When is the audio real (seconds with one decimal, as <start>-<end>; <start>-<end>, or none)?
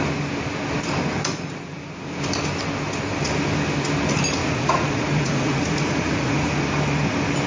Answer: 0.0-4.4; 6.6-7.5